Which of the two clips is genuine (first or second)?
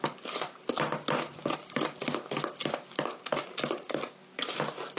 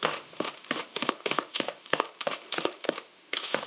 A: first